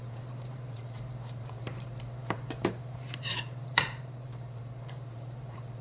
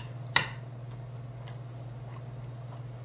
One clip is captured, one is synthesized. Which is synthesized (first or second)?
first